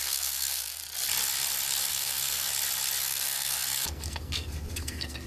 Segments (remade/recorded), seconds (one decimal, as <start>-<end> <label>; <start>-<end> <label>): 0.0-0.8 remade; 0.8-1.9 recorded; 1.9-2.5 remade; 2.5-3.0 recorded; 3.0-5.3 remade